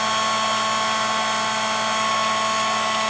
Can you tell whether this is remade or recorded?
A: recorded